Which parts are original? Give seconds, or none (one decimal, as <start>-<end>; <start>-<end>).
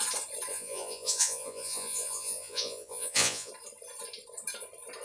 0.0-0.5; 3.5-5.0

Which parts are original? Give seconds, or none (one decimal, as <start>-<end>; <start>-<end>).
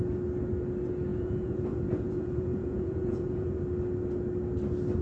0.0-1.1; 3.6-5.0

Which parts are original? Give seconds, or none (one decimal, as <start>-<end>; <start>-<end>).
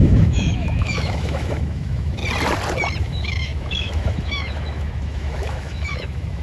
2.2-3.0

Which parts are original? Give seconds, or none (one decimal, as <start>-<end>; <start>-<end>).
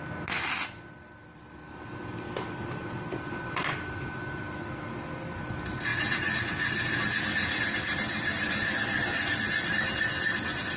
0.0-10.8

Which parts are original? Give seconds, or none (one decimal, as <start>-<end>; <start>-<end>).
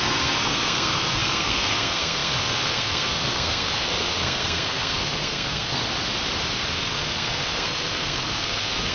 5.8-6.7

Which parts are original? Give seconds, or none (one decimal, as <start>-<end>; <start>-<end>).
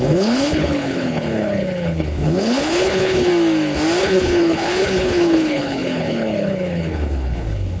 3.3-4.0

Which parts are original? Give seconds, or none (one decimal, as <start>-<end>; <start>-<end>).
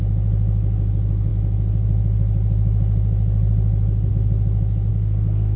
0.0-4.9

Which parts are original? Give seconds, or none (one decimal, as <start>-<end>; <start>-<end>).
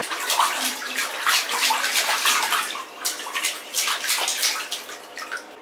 1.0-2.2; 4.3-5.0